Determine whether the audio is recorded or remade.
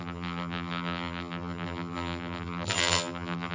remade